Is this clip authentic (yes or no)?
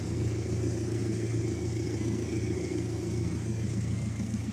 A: no